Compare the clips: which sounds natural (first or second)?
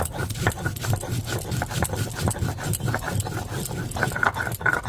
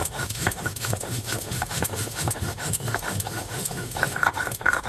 first